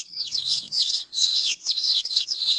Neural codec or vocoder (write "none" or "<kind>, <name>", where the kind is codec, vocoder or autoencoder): codec, SNAC